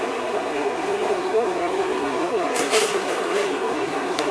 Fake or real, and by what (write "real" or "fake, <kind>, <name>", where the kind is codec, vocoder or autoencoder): fake, codec, SNAC